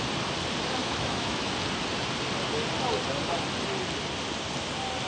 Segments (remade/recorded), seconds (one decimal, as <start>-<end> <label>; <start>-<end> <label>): 0.0-0.8 recorded; 0.8-1.5 remade; 1.5-5.1 recorded